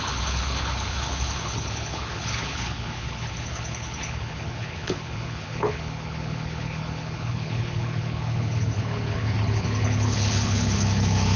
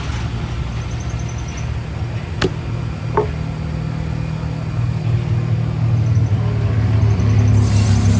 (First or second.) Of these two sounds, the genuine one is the second